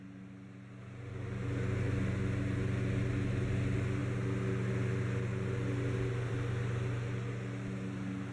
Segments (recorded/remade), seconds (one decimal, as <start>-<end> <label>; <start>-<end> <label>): 0.0-8.3 recorded